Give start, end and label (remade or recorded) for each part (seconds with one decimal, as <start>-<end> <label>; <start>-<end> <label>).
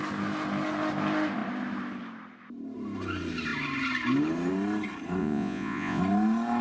0.0-5.2 recorded; 5.2-6.0 remade; 6.0-6.6 recorded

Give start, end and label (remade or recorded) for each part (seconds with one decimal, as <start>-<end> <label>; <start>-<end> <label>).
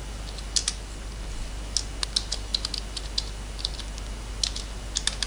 0.0-5.3 recorded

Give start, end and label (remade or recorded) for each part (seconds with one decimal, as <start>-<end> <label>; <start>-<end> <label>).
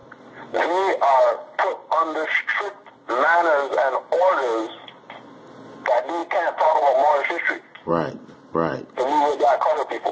0.0-0.6 remade; 0.6-10.1 recorded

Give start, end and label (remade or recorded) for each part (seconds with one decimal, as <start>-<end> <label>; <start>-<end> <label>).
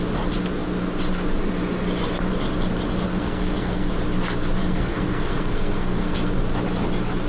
0.0-3.1 recorded; 3.1-3.9 remade; 3.9-4.6 recorded; 4.6-6.4 remade; 6.4-7.3 recorded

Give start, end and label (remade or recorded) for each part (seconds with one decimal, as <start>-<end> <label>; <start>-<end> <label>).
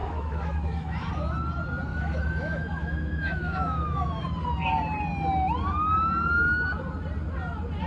0.0-1.1 remade; 1.1-1.9 recorded; 1.9-4.2 remade; 4.2-7.9 recorded